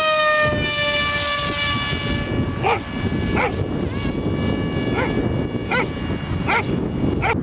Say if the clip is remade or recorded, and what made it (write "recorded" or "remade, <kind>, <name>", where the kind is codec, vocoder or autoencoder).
recorded